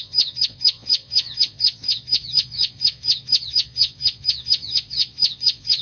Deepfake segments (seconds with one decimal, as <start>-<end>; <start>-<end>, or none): 0.0-5.8

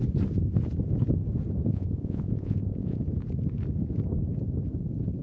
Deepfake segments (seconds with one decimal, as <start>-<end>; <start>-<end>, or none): 1.7-3.0

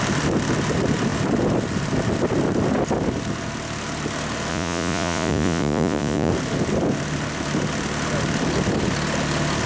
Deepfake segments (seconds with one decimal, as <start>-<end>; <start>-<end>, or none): 4.5-6.3

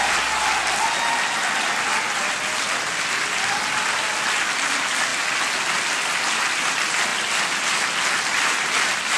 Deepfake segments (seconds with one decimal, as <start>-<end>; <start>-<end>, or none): none

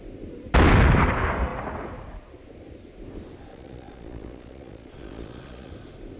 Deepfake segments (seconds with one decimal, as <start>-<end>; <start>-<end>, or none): 3.5-5.7

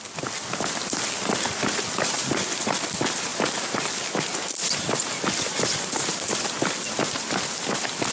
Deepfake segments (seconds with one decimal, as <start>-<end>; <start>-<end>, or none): none